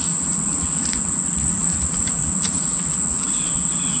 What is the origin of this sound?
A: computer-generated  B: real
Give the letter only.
A